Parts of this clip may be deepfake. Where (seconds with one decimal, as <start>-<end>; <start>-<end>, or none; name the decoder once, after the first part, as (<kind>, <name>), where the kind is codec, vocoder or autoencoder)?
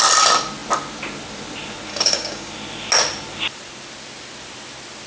1.9-2.5 (codec, DAC)